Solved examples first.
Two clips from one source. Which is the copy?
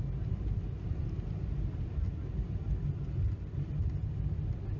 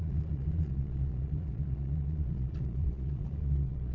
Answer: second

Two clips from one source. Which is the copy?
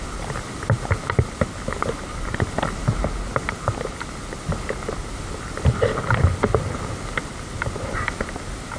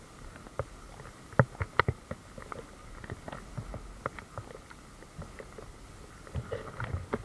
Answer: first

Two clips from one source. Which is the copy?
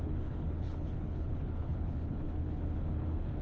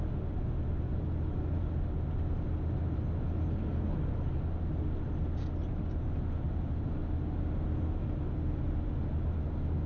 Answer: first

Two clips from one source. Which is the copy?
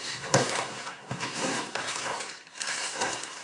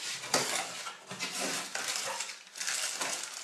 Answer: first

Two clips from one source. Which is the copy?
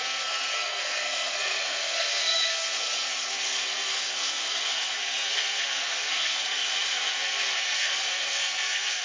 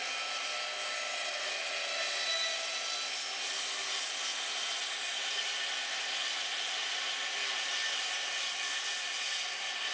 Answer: first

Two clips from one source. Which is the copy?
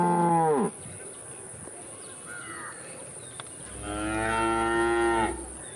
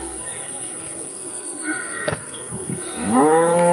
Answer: second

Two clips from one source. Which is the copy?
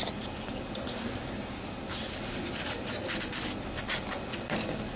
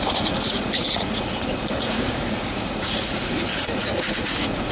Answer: second